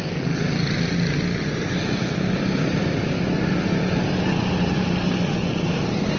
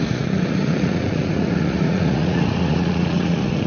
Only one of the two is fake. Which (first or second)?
second